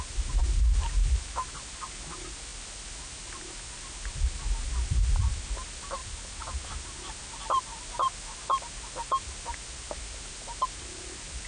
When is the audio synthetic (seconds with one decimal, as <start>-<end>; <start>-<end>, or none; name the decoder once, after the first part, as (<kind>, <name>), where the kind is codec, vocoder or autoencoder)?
none